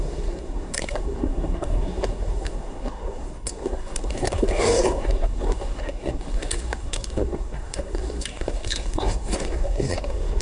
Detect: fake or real fake